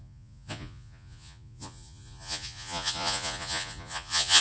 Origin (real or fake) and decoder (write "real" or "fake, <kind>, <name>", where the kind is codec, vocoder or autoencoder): fake, vocoder, Vocos